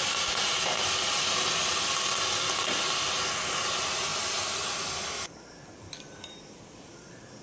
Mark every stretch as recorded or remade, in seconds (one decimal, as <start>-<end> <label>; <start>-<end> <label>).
0.0-7.4 recorded